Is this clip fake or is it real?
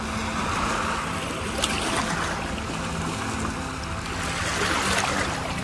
real